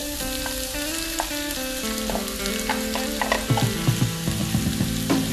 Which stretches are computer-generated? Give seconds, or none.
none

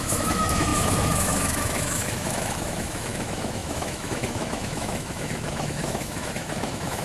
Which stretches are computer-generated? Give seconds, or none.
0.0-7.0 (autoencoder, DAC-VAE)

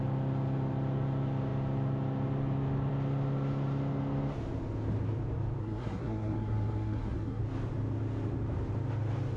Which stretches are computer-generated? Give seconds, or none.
5.6-7.4 (codec, SNAC)

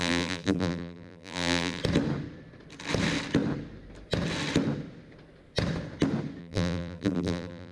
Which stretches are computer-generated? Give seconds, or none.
0.0-1.8 (vocoder, BigVGAN v2); 6.4-7.7

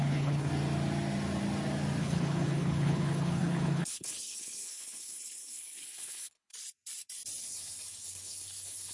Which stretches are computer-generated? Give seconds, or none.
0.0-0.5 (codec, HILCodec); 2.0-6.5; 7.4-8.9

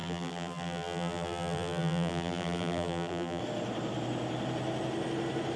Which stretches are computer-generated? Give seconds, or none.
0.0-3.4 (vocoder, BigVGAN v2)